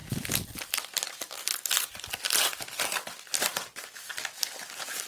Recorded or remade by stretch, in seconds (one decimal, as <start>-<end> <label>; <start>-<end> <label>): 0.0-5.1 recorded